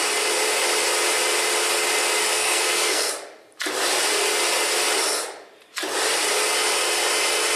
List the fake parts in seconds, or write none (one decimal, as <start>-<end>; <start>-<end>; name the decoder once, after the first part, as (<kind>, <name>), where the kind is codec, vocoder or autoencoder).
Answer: 2.2-3.1 (codec, SNAC)